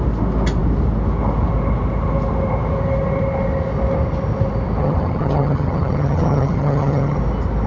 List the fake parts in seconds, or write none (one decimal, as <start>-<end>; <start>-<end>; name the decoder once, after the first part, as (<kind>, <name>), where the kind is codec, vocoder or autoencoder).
4.8-7.2 (vocoder, HiFi-GAN)